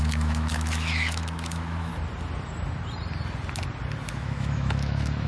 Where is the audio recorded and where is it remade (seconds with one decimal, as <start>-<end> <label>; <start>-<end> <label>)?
0.0-1.9 remade; 1.9-4.1 recorded; 4.1-5.3 remade